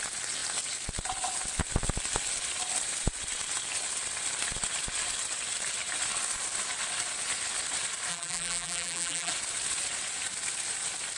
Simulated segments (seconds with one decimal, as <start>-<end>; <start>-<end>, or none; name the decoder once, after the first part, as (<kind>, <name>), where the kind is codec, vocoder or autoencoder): 8.1-9.3 (vocoder, BigVGAN v2)